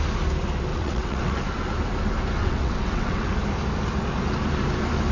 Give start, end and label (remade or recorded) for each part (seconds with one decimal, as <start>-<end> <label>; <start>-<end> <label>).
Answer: 0.0-0.7 recorded; 0.7-1.4 remade; 1.4-2.4 recorded; 2.4-3.3 remade; 3.3-5.1 recorded